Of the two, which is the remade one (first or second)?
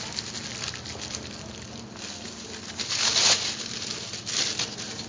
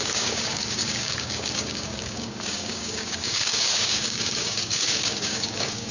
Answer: second